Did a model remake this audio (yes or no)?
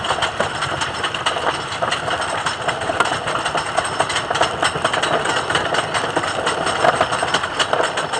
no